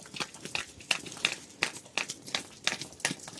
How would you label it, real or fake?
real